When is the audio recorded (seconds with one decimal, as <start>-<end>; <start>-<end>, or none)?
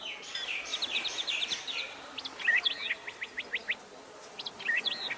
none